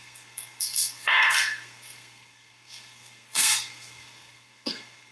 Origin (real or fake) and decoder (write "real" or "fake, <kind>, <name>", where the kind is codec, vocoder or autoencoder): fake, codec, SNAC